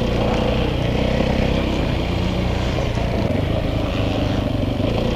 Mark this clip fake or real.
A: real